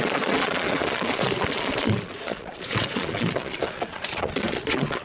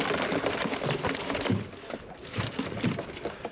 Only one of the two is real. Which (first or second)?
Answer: second